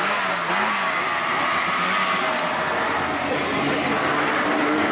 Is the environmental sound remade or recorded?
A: recorded